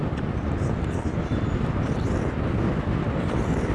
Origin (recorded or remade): recorded